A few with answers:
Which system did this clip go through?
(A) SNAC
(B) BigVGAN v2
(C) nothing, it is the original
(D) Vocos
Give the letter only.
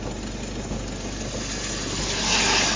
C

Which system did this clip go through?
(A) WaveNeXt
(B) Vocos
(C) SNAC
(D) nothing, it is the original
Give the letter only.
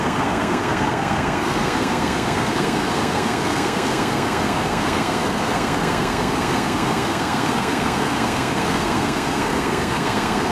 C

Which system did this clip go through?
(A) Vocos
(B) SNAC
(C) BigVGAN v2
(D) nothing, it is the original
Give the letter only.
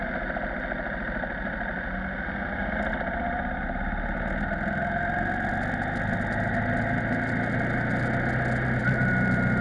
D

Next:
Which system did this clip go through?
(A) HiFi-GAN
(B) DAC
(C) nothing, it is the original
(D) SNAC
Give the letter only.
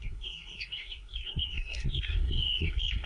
D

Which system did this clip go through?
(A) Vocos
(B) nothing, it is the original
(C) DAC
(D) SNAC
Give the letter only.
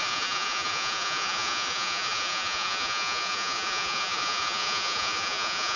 A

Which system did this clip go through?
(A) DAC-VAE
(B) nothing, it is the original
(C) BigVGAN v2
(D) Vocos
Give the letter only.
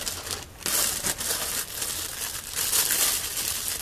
B